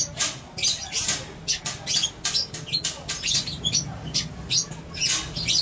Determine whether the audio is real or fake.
real